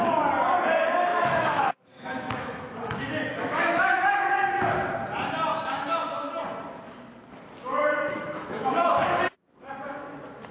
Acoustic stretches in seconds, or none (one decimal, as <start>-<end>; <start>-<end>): 0.0-1.1; 4.5-5.5; 6.3-8.1; 8.9-10.5